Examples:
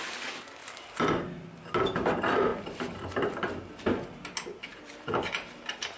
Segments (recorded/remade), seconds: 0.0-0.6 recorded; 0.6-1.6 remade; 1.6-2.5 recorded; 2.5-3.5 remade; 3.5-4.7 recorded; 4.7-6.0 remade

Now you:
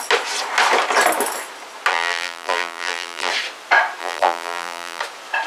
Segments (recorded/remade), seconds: 0.0-1.9 recorded; 1.9-3.3 remade; 3.3-4.0 recorded; 4.0-5.0 remade; 5.0-5.5 recorded